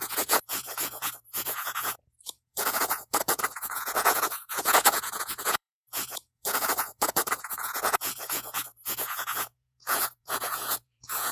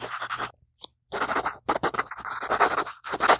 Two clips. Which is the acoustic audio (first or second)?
second